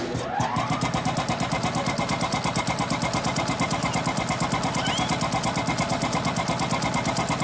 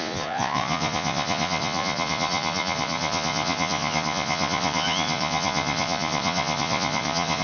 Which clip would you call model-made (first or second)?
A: second